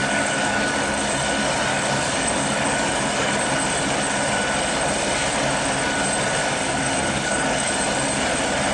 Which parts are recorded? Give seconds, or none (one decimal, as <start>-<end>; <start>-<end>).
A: 1.1-1.7; 3.4-6.4; 7.7-8.7